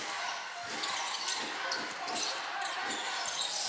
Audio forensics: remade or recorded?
remade